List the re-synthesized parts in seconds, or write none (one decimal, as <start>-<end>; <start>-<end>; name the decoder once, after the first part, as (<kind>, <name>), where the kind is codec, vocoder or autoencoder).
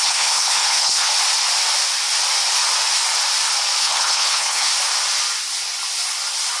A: 0.0-1.1 (codec, HILCodec); 3.8-4.7